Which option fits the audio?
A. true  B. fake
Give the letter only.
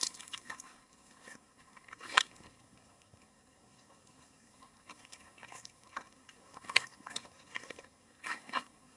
B